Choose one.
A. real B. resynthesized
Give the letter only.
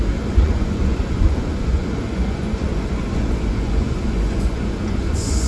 B